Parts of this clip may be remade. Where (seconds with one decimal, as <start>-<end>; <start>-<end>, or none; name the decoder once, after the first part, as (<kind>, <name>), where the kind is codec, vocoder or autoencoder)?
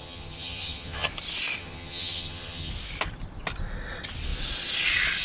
0.0-1.1 (vocoder, HiFi-GAN); 1.6-2.7